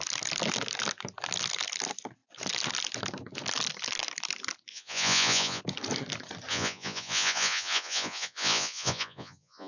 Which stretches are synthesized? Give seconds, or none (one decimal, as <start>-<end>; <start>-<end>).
4.7-5.6; 6.5-9.7